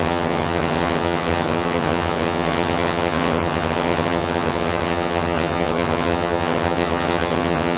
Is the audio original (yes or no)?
no